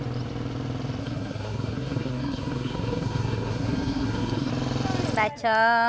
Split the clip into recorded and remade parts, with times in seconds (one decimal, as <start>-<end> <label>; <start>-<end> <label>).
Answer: 0.0-1.0 recorded; 1.0-4.5 remade; 4.5-5.9 recorded